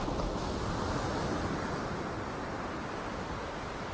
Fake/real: real